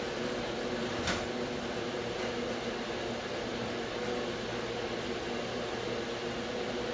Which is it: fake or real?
real